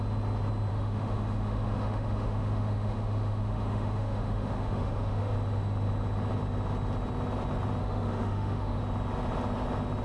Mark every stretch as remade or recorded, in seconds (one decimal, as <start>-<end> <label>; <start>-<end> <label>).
0.0-0.7 recorded; 0.7-5.3 remade; 5.3-7.8 recorded; 7.8-8.8 remade; 8.8-10.0 recorded